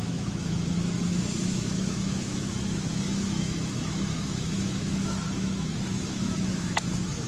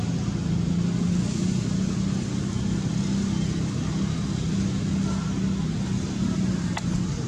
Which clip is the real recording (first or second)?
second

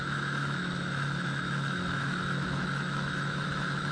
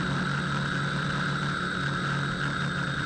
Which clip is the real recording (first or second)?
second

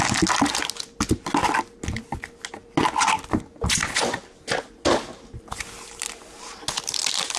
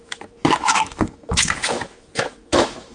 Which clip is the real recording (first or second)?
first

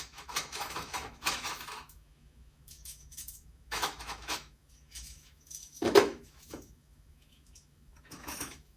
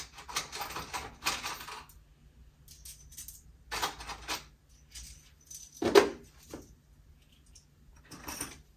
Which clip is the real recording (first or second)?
second